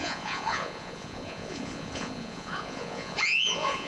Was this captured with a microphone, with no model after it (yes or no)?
no